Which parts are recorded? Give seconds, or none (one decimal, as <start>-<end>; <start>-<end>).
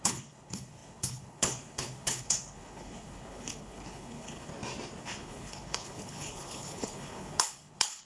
4.5-5.0